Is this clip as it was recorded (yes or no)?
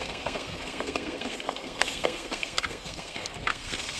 no